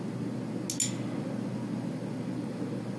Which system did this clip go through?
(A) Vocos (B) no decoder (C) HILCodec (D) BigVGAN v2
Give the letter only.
B